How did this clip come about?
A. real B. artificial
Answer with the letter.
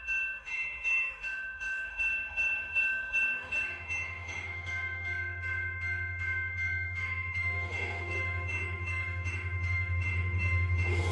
B